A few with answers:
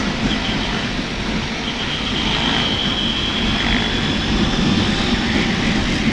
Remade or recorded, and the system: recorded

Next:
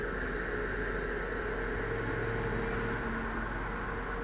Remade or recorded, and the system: recorded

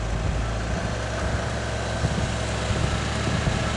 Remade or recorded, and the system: recorded